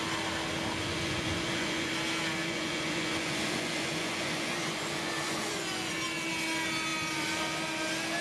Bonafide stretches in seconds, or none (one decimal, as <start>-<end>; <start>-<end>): 0.0-0.8; 1.9-2.4; 5.9-8.2